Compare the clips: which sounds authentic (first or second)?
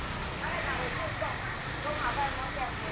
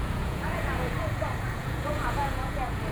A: first